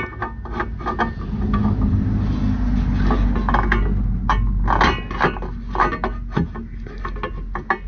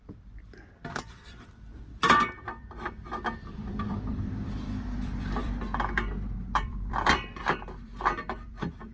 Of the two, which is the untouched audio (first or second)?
first